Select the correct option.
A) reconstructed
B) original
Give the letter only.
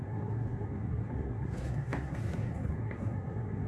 A